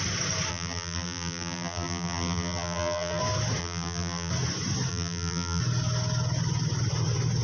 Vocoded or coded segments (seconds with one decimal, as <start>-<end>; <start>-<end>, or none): 0.5-3.2; 3.6-4.3; 4.9-5.6